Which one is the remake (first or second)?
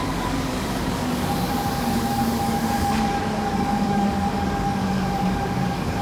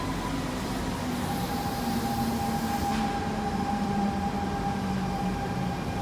first